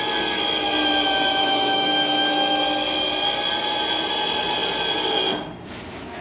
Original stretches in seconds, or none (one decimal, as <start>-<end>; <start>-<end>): 0.0-1.4; 2.6-6.2